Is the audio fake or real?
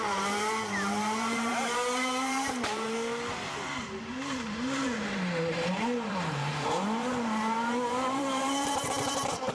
fake